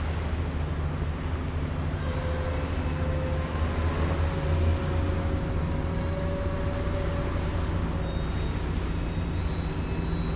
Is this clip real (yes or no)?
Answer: yes